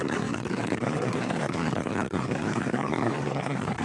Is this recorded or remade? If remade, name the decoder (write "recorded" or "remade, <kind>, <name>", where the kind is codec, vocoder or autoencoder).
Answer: remade, codec, SNAC